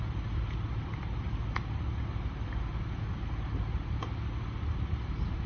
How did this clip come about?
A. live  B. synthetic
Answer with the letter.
A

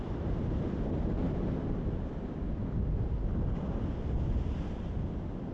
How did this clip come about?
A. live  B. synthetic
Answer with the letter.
A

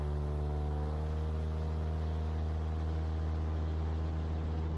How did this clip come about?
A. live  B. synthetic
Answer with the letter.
A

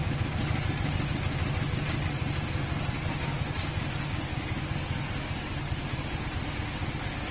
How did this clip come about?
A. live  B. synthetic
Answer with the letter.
A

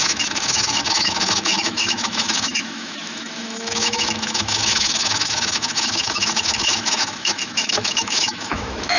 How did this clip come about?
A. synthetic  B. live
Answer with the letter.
A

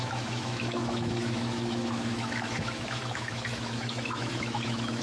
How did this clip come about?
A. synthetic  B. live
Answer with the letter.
A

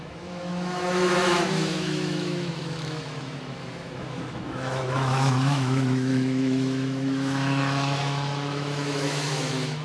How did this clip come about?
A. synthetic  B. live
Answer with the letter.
A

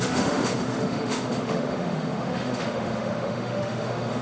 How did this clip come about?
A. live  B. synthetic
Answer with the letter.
B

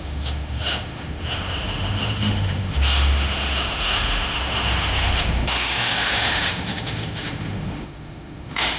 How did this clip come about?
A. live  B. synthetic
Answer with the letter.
B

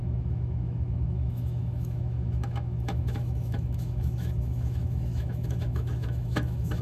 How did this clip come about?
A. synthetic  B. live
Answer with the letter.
A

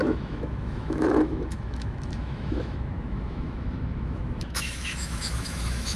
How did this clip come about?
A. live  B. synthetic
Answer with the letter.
B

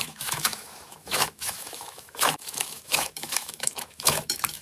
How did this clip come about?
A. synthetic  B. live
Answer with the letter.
A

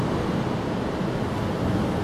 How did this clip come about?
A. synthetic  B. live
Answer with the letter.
B